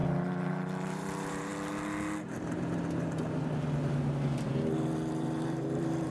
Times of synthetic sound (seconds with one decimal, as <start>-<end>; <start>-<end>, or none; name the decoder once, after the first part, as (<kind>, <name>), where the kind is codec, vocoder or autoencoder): 0.9-1.5 (vocoder, BigVGAN v2); 5.1-6.1

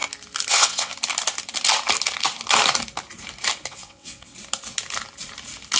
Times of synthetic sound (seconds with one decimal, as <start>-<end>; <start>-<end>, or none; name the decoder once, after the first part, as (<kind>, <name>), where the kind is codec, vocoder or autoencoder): 0.5-0.9 (vocoder, WaveNeXt); 3.7-4.3

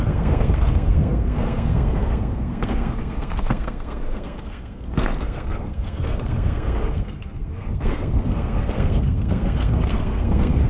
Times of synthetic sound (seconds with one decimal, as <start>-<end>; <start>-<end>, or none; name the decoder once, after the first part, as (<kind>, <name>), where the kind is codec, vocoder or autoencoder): 0.0-10.7 (codec, SNAC)

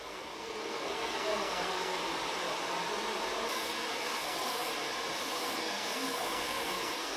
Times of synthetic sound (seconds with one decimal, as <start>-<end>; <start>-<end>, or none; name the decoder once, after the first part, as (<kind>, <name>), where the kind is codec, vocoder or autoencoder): 0.0-2.0 (codec, SNAC); 3.5-4.7; 5.2-7.2

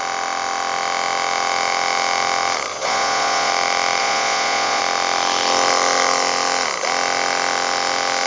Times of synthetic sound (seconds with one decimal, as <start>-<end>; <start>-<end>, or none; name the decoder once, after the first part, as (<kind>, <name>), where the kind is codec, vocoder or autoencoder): 2.7-3.5 (vocoder, Vocos); 4.0-4.8

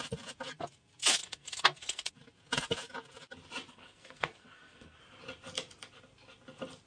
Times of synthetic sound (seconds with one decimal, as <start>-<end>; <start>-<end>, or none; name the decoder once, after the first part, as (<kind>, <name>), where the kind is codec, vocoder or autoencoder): 1.2-2.1 (codec, SNAC); 3.7-5.0

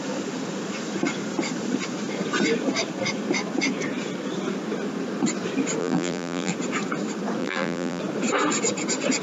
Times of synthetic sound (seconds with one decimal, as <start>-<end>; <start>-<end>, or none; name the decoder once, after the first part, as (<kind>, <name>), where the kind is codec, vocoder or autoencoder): 5.8-6.5 (vocoder, BigVGAN v2); 7.4-8.0